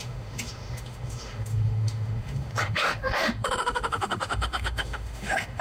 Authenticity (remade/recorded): remade